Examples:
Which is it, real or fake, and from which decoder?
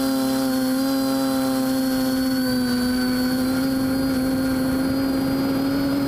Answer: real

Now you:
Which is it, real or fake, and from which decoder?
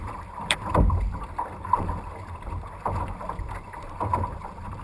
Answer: fake, vocoder, BigVGAN v2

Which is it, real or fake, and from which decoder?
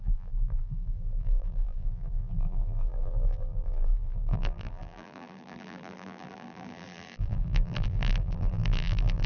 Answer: fake, vocoder, BigVGAN v2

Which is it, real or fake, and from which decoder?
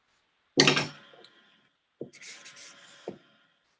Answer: real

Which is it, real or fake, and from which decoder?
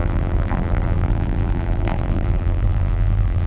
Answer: fake, vocoder, BigVGAN v2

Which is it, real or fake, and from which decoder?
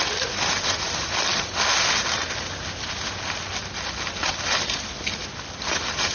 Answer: real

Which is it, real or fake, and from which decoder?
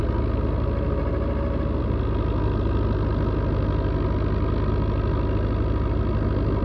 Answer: real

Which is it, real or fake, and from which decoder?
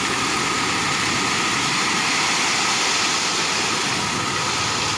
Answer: real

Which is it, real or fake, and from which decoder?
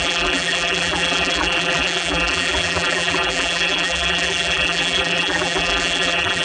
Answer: fake, vocoder, BigVGAN v2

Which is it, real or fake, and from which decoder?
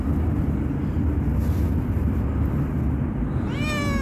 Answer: real